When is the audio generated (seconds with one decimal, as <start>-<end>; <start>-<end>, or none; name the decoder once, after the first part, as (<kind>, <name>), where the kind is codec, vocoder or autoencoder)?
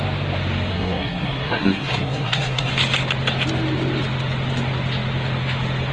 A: 0.7-2.7 (codec, SNAC)